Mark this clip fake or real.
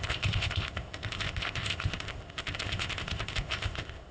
fake